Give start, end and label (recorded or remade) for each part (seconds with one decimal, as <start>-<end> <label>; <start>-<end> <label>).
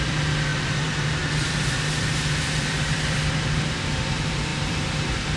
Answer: 0.0-5.4 remade